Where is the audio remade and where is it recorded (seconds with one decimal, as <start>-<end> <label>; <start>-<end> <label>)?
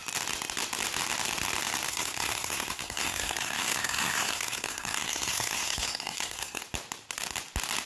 0.0-1.9 recorded; 1.9-6.6 remade; 6.6-7.9 recorded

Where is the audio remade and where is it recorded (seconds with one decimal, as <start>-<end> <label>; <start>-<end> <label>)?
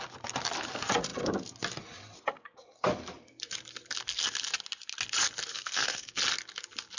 0.0-5.5 recorded; 5.5-6.2 remade; 6.2-7.0 recorded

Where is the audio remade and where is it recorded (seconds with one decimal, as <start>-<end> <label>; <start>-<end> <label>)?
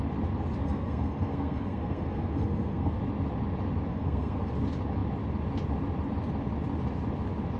0.0-0.6 recorded; 0.6-3.0 remade; 3.0-3.9 recorded; 3.9-4.5 remade; 4.5-7.6 recorded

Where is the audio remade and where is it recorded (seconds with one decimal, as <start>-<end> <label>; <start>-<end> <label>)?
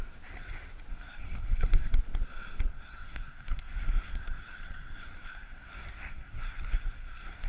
0.0-0.9 recorded; 0.9-1.9 remade; 1.9-2.7 recorded; 2.7-7.5 remade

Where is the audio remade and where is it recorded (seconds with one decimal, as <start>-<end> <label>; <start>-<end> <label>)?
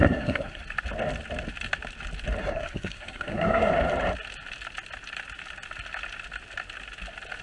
0.0-0.6 remade; 0.6-2.4 recorded; 2.4-3.7 remade; 3.7-7.4 recorded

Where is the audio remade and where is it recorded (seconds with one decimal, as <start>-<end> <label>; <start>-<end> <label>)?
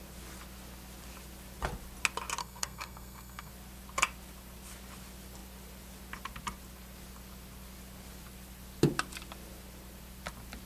0.0-2.4 recorded; 2.4-3.5 remade; 3.5-10.7 recorded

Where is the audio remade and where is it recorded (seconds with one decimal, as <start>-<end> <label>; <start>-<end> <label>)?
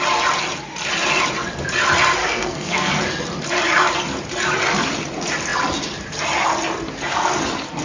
0.0-2.2 recorded; 2.2-2.9 remade; 2.9-7.8 recorded